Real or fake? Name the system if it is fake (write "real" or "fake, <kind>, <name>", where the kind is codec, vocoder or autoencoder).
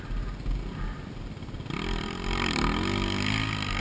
real